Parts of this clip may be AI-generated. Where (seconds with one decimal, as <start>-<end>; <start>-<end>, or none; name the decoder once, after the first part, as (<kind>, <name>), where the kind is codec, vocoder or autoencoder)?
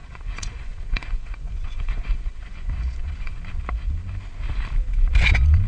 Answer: 0.0-3.4 (vocoder, Vocos)